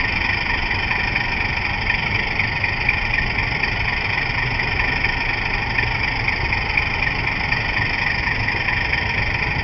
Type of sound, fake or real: real